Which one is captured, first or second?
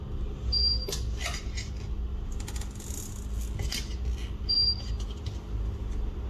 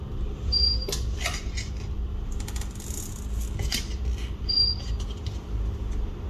first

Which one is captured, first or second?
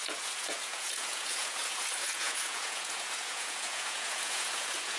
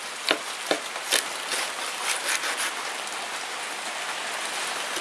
second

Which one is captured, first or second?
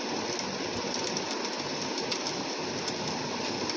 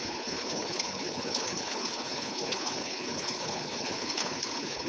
first